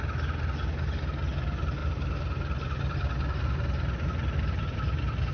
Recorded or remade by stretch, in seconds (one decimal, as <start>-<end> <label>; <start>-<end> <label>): 0.0-5.3 recorded